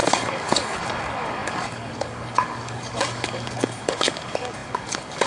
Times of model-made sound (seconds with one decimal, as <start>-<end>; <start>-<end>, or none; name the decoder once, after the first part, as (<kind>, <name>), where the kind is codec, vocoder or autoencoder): 0.0-5.3 (codec, DAC)